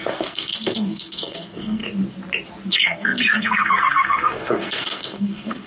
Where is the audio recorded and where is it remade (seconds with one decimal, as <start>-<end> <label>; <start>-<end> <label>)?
0.0-1.8 remade; 1.8-2.7 recorded; 2.7-5.7 remade